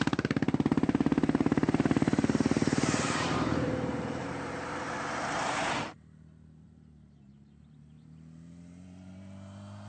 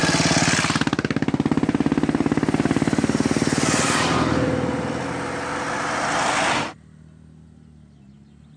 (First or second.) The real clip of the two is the second